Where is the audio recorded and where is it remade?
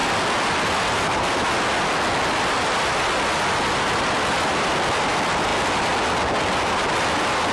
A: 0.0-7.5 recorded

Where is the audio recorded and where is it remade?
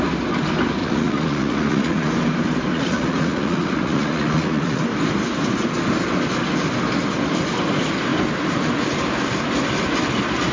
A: 0.0-0.8 recorded; 0.8-2.1 remade; 2.1-2.7 recorded; 2.7-4.8 remade; 4.8-10.5 recorded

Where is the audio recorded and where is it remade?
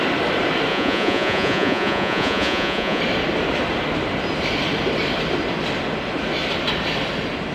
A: 0.0-0.7 recorded; 0.7-3.0 remade; 3.0-7.5 recorded